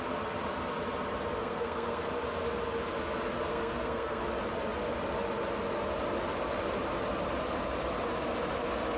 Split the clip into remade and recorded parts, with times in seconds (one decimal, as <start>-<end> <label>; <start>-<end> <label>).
0.0-1.4 recorded; 1.4-2.1 remade; 2.1-3.5 recorded; 3.5-4.2 remade; 4.2-9.0 recorded